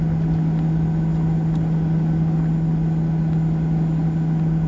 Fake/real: real